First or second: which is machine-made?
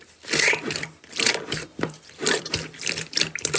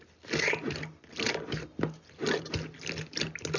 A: first